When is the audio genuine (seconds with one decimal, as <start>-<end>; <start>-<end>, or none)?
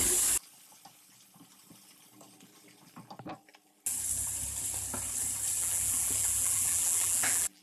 0.0-5.6